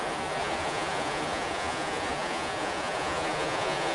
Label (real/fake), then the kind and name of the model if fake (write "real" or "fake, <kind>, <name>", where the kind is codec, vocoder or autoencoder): fake, vocoder, Vocos